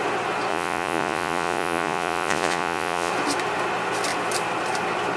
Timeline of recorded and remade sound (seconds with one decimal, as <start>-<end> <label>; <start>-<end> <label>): 0.0-0.5 recorded; 0.5-3.1 remade; 3.1-5.2 recorded